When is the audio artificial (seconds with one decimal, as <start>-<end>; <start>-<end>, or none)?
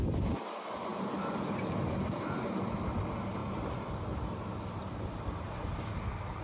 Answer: 0.9-2.2; 3.4-3.9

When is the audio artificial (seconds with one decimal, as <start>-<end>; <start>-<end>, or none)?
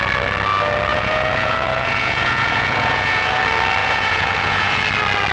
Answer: 0.9-3.4; 3.8-4.8